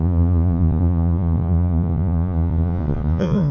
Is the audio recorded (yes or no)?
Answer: no